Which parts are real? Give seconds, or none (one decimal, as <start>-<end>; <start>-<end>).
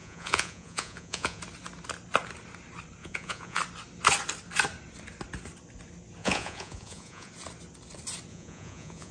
1.4-3.0; 3.6-6.2; 7.3-8.3